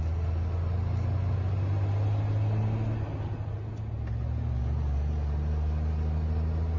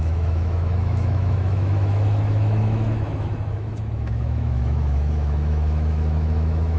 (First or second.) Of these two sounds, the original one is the first